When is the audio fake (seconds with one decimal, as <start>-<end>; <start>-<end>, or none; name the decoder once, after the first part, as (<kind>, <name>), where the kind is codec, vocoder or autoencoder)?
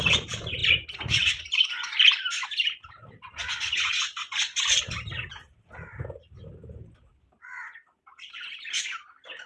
none